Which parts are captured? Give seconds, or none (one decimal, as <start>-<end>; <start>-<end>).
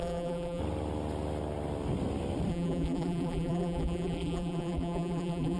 0.6-2.5